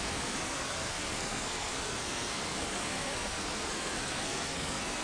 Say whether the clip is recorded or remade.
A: remade